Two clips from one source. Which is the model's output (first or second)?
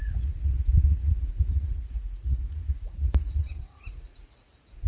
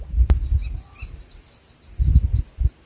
first